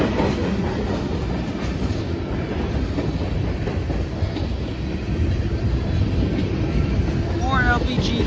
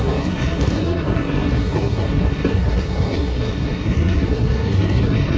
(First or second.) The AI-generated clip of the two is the second